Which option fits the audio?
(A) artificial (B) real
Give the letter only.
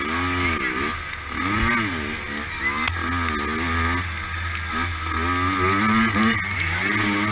B